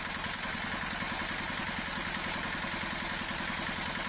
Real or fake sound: real